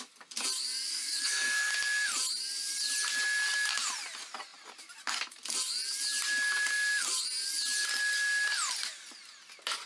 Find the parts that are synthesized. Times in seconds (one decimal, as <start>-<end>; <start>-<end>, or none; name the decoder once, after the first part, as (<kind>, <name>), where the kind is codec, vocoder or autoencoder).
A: 0.9-1.7 (codec, SNAC)